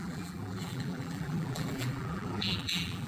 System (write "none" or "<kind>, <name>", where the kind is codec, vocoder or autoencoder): vocoder, BigVGAN v2